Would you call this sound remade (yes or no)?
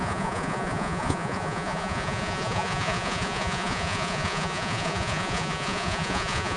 yes